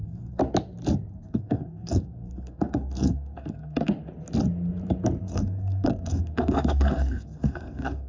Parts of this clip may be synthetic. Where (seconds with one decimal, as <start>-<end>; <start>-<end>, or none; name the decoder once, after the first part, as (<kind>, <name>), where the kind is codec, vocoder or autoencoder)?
0.0-0.4 (codec, SNAC); 1.1-3.9; 5.2-8.1